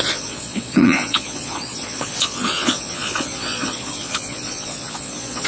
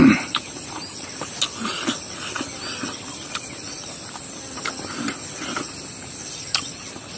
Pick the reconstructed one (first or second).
first